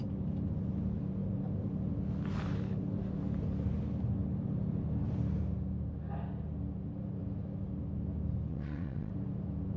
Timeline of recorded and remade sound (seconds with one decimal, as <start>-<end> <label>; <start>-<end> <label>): 0.0-8.5 recorded; 8.5-9.1 remade; 9.1-9.8 recorded

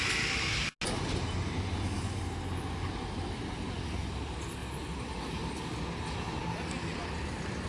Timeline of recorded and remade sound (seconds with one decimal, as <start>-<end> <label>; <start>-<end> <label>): 0.0-7.7 recorded

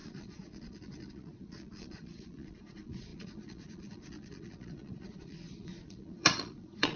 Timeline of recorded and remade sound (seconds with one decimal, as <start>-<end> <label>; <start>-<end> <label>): 0.0-7.0 remade

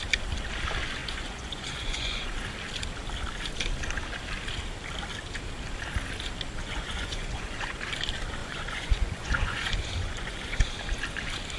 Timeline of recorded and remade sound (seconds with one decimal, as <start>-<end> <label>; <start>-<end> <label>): 0.0-1.0 recorded; 1.0-2.4 remade; 2.4-6.6 recorded; 6.6-7.8 remade; 7.8-8.4 recorded; 8.4-10.7 remade; 10.7-11.6 recorded

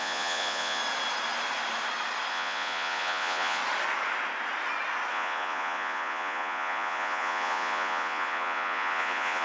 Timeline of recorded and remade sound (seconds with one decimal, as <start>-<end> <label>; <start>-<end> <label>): 0.0-0.8 remade; 0.8-2.3 recorded; 2.3-3.6 remade; 3.6-5.1 recorded; 5.1-9.4 remade

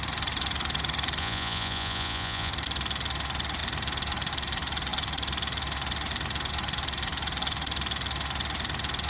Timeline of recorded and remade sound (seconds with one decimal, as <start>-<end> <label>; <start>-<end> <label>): 0.0-1.2 recorded; 1.2-2.5 remade; 2.5-9.1 recorded

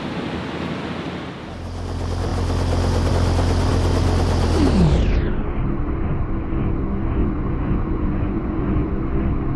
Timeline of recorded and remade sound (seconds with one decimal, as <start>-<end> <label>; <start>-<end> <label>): 0.0-7.2 recorded; 7.2-8.9 remade; 8.9-9.6 recorded